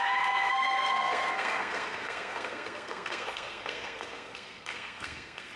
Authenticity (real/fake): fake